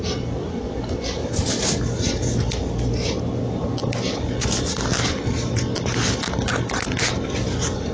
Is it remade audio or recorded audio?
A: recorded